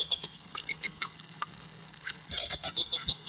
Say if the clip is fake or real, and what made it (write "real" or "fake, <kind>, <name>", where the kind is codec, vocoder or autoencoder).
fake, codec, SNAC